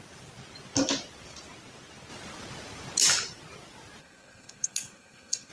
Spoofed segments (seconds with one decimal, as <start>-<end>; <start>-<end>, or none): 4.0-5.5